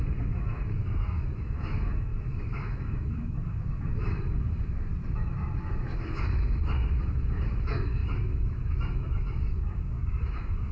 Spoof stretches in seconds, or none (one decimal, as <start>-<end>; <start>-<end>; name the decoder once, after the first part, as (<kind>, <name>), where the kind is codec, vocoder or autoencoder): 0.0-4.9 (autoencoder, DAC-VAE); 5.7-10.7